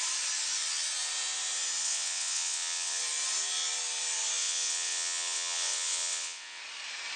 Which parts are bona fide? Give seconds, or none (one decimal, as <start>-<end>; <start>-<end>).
0.0-1.8; 3.0-4.4; 6.6-7.2